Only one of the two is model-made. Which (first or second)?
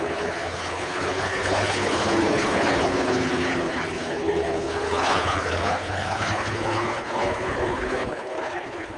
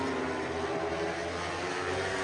first